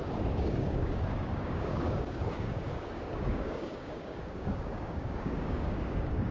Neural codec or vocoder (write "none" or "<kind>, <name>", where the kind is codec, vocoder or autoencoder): codec, DAC